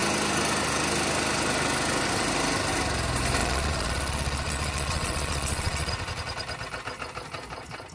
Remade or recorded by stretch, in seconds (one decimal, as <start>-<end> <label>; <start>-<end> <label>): 0.0-3.4 recorded; 3.4-5.9 remade; 5.9-7.9 recorded